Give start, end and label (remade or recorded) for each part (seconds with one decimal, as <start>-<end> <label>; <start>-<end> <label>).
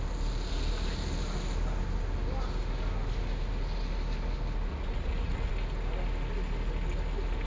0.0-4.7 recorded; 4.7-5.5 remade; 5.5-7.5 recorded